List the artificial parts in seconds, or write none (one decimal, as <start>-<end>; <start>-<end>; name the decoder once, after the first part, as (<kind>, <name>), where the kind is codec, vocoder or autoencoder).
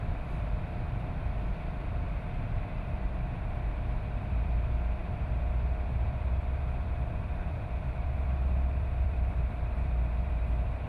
0.0-10.9 (vocoder, BigVGAN v2)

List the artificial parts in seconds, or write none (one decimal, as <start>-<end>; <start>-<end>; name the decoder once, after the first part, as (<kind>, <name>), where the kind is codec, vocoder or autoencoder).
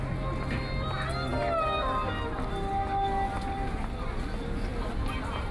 none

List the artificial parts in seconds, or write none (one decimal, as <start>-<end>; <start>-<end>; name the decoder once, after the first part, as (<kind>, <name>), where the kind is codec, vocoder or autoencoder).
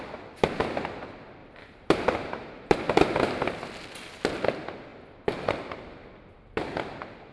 1.4-3.6 (vocoder, BigVGAN v2)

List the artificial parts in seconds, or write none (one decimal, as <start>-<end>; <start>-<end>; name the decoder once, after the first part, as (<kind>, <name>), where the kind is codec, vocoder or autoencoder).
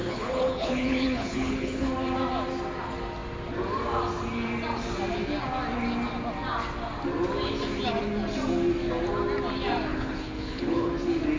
0.0-1.9 (codec, HILCodec); 9.9-10.9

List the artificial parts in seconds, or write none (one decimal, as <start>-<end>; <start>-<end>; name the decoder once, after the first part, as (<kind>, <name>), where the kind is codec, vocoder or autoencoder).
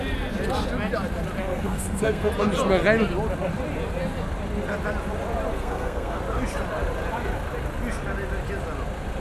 1.4-2.3 (codec, SNAC); 5.5-6.2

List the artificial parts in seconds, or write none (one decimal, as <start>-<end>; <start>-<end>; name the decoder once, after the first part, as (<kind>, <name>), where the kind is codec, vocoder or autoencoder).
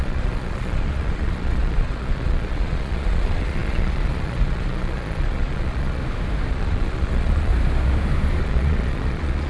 0.0-6.0 (vocoder, Vocos); 6.5-7.5; 8.4-9.5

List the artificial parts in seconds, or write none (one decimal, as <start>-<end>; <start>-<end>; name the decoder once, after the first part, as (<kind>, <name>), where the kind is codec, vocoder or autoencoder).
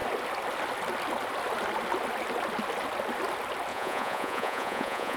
3.7-5.2 (vocoder, Vocos)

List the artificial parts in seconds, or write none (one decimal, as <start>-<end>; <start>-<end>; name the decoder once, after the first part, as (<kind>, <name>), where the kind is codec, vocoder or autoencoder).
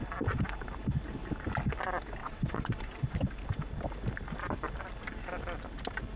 2.2-2.8 (vocoder, WaveNeXt)